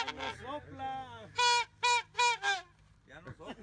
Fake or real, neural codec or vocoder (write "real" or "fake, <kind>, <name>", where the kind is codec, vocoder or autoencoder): real